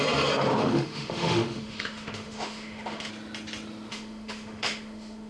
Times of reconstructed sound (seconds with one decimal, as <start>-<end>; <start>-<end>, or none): 0.6-3.1; 3.9-5.3

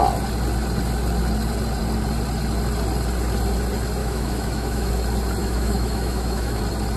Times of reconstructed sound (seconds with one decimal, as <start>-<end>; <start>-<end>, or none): 4.0-4.9; 5.4-6.6

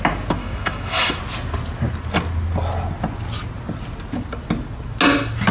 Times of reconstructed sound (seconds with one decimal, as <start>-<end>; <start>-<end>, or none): 0.4-1.2